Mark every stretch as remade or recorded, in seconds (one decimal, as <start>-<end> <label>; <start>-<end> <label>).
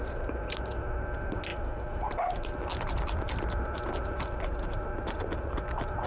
0.0-6.1 recorded